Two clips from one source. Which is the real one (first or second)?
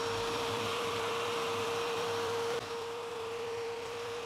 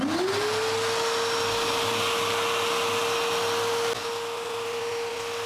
second